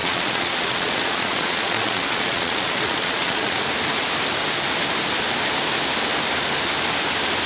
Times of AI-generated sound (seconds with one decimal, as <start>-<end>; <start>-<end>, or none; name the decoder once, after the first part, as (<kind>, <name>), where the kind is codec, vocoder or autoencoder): 0.0-3.6 (vocoder, Vocos)